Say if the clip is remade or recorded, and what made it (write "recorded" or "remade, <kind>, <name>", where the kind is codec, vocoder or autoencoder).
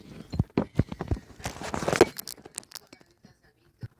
recorded